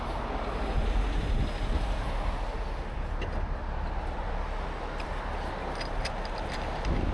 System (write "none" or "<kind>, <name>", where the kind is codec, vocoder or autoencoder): none